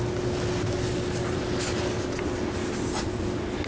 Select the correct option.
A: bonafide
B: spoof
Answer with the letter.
A